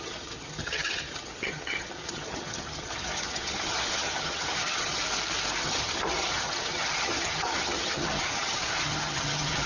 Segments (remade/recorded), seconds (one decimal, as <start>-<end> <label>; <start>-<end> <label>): 0.0-5.0 remade; 5.0-5.6 recorded; 5.6-9.7 remade